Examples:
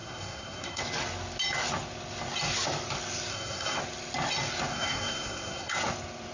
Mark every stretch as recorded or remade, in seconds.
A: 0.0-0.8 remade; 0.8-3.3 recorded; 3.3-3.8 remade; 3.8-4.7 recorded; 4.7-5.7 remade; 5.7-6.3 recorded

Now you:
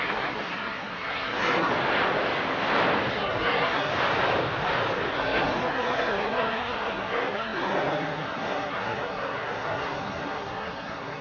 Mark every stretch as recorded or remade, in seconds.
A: 0.0-1.7 remade; 1.7-3.1 recorded; 3.1-3.9 remade; 3.9-5.1 recorded; 5.1-11.2 remade

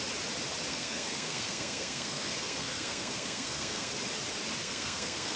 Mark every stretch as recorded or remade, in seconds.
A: 0.0-0.7 recorded; 0.7-3.9 remade; 3.9-4.6 recorded; 4.6-5.4 remade

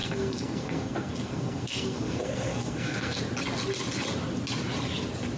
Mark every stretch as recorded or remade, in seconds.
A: 0.0-3.2 remade; 3.2-5.4 recorded